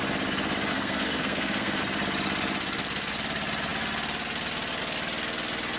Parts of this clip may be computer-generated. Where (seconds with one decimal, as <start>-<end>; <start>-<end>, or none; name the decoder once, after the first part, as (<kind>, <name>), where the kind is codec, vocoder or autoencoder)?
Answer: 0.7-1.8 (codec, SNAC)